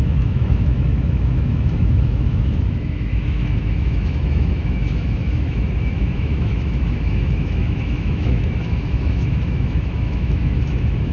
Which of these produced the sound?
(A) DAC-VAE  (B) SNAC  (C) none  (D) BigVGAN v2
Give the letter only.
A